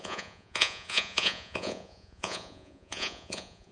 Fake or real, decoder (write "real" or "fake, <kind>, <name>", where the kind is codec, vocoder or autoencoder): fake, vocoder, Vocos